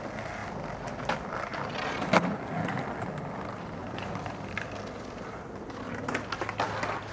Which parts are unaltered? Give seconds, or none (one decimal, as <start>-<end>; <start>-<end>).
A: 0.0-0.4; 0.9-1.5; 2.7-3.8; 5.8-7.1